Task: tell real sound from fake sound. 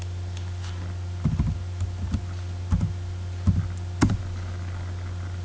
real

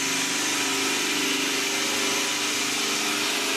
real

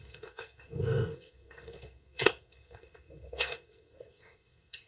fake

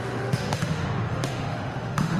fake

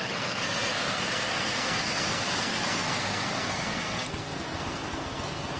fake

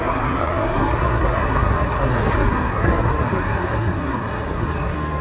fake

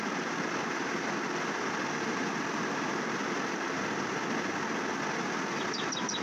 real